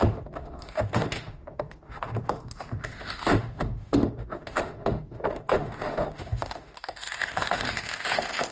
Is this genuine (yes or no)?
no